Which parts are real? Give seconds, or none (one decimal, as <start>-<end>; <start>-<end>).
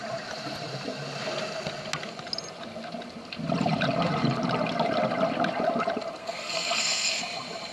0.0-6.2; 7.2-7.7